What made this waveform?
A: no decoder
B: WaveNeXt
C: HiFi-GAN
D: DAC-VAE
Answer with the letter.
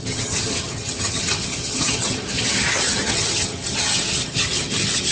C